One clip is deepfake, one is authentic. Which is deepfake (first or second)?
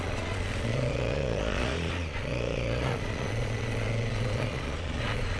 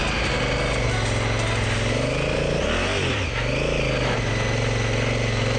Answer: first